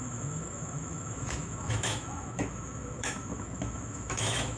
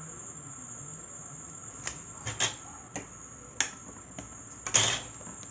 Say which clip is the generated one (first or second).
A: first